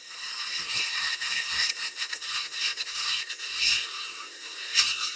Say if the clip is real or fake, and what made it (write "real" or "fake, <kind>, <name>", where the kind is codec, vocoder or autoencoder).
fake, codec, SNAC